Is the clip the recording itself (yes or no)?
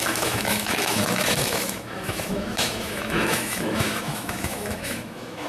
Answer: no